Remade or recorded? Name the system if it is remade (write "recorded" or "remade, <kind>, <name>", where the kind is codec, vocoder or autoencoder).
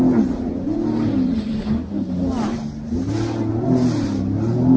recorded